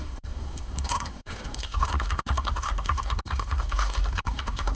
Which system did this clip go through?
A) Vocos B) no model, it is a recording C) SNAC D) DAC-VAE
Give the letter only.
C